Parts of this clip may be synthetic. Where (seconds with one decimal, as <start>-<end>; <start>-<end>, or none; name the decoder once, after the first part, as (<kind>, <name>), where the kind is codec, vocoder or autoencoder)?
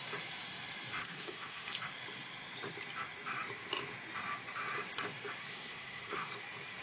1.0-1.7 (codec, SNAC); 5.4-6.3